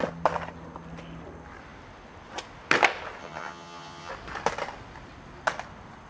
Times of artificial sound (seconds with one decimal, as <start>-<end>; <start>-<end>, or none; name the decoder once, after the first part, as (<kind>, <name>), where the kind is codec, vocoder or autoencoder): 3.2-4.1 (vocoder, HiFi-GAN)